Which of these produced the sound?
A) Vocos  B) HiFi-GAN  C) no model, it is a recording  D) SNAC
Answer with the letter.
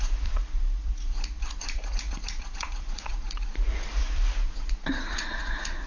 A